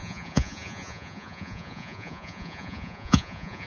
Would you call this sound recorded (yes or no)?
no